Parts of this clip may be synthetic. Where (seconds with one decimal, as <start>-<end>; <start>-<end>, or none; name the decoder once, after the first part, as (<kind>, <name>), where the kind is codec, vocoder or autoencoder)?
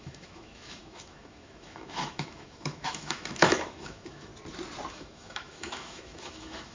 0.0-4.3 (autoencoder, DAC-VAE); 4.9-6.7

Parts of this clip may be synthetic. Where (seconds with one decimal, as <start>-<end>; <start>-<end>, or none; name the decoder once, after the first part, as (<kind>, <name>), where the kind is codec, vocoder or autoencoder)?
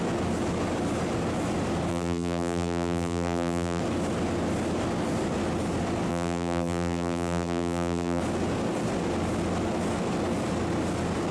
1.9-3.8 (vocoder, BigVGAN v2); 6.1-8.2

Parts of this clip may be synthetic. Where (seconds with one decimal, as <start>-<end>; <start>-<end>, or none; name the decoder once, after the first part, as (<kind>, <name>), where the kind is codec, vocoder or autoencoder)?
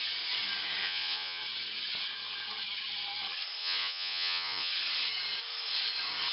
0.8-1.4 (vocoder, Vocos); 3.6-4.7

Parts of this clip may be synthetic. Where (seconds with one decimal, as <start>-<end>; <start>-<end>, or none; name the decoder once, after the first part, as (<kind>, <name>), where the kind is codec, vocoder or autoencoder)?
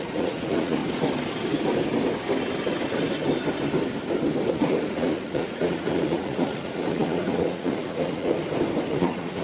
0.0-0.8 (vocoder, Vocos); 4.5-8.4; 8.9-9.4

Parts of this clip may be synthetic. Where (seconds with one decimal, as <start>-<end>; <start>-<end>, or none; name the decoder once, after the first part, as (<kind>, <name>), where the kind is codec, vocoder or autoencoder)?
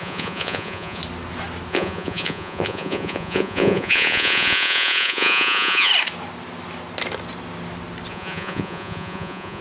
0.0-1.0 (vocoder, Vocos); 1.7-5.9; 8.1-9.6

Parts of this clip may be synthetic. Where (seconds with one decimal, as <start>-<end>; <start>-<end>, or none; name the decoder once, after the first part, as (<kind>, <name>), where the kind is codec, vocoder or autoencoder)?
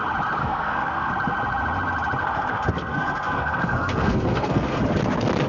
0.4-1.1 (codec, SNAC); 2.2-4.8